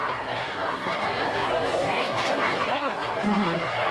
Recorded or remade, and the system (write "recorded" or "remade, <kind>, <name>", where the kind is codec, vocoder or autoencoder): remade, codec, SNAC